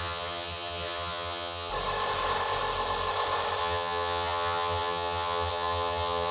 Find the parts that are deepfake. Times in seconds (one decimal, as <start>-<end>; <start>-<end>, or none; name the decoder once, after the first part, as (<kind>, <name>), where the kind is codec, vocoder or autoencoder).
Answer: 0.0-1.7 (vocoder, HiFi-GAN); 3.6-6.3